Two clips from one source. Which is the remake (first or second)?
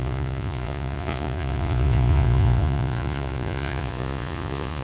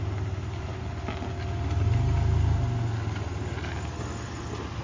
first